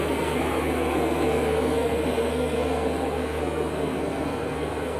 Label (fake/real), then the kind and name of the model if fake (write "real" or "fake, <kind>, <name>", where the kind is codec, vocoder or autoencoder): fake, codec, SNAC